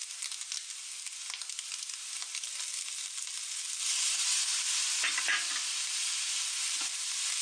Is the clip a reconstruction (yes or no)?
no